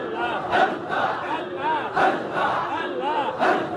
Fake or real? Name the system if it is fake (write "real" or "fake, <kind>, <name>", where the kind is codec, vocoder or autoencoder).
real